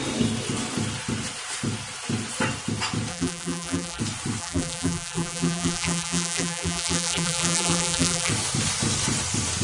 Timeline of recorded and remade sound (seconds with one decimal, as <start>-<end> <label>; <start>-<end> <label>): 0.0-3.1 recorded; 3.1-4.0 remade; 4.0-4.4 recorded; 4.4-8.3 remade; 8.3-9.6 recorded